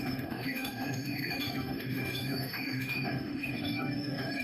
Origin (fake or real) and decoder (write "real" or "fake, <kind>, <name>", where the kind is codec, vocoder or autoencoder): fake, autoencoder, DAC-VAE